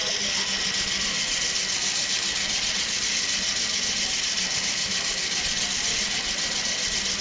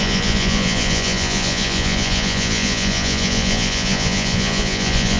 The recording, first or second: first